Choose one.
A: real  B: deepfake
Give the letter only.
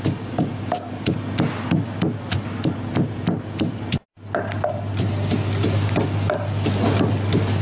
A